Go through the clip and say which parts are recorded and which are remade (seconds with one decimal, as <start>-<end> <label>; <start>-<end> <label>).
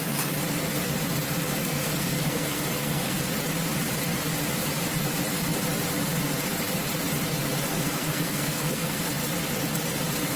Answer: 0.0-1.6 recorded; 1.6-3.3 remade; 3.3-7.7 recorded; 7.7-9.0 remade; 9.0-10.4 recorded